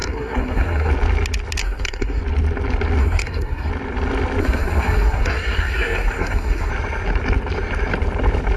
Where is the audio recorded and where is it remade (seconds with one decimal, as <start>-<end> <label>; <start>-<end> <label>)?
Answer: 0.0-0.9 remade; 0.9-1.6 recorded; 1.6-2.2 remade; 2.2-3.0 recorded; 3.0-3.7 remade; 3.7-4.4 recorded; 4.4-6.7 remade; 6.7-8.6 recorded